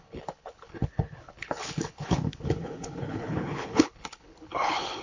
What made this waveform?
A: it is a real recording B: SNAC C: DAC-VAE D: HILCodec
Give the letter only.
D